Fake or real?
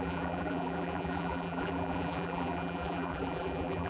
fake